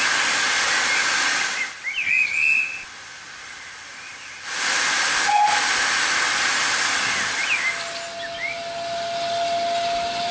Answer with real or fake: real